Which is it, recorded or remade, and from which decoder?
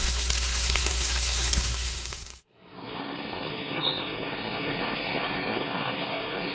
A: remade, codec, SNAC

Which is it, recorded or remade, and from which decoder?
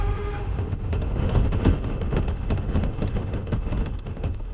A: remade, autoencoder, DAC-VAE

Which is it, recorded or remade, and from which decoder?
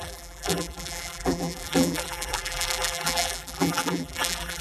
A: remade, vocoder, BigVGAN v2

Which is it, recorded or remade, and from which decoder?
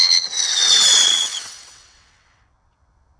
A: remade, vocoder, WaveNeXt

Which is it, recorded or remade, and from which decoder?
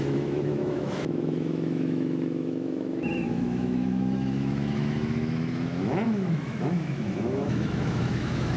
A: remade, autoencoder, DAC-VAE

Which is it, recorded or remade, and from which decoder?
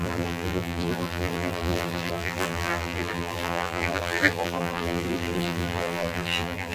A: remade, vocoder, BigVGAN v2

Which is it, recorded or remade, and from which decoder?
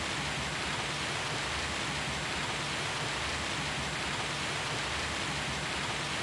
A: recorded